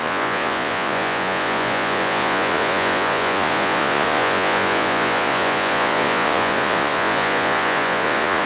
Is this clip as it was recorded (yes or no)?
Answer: no